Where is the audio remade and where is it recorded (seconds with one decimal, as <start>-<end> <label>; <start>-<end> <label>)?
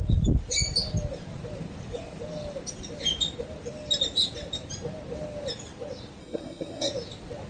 0.0-6.2 recorded; 6.2-6.9 remade; 6.9-7.5 recorded